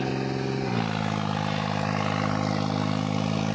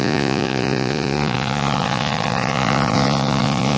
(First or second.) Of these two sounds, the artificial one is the second